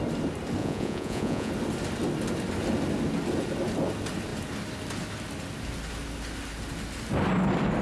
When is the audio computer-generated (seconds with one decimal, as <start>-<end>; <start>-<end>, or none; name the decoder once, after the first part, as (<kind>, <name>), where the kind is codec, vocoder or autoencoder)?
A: 0.6-1.5 (vocoder, Vocos)